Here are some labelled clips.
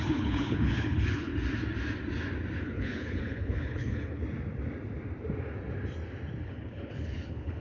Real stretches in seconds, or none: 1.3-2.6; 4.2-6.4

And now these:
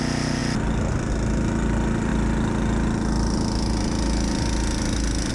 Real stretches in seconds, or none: 0.0-5.3

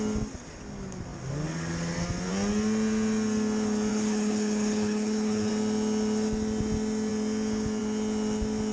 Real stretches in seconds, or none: 0.0-3.9; 5.5-8.7

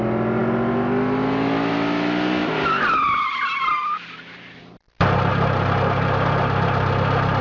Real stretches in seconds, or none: 0.0-7.4

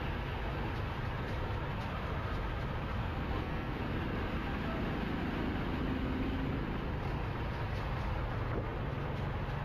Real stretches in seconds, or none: 0.0-3.0; 3.8-9.6

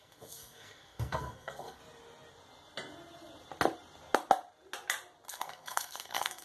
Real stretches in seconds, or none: 1.8-5.3

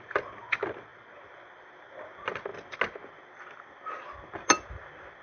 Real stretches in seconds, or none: 0.0-5.2